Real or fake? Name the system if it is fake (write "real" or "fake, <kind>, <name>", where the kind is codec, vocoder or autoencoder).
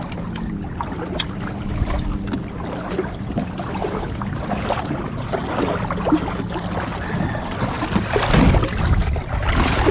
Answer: real